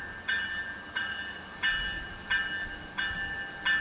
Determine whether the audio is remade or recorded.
recorded